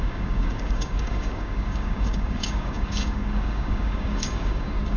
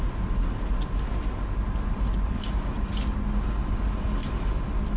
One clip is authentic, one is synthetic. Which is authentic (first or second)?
second